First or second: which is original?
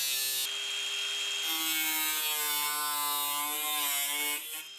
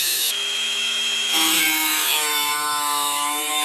first